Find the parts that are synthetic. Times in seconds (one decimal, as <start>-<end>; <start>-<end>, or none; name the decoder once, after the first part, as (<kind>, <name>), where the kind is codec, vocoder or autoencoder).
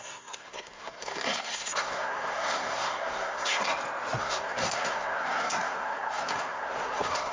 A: 0.0-3.7 (codec, SNAC); 4.2-7.3